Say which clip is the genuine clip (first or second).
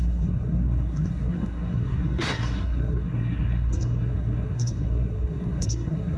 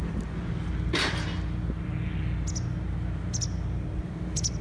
second